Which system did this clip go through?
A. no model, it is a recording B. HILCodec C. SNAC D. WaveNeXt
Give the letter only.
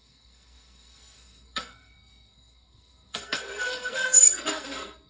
C